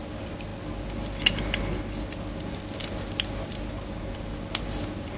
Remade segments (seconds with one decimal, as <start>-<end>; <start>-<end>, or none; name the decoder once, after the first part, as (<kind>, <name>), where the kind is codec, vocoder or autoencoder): none